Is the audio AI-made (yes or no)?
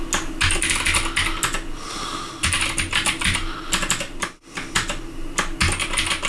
no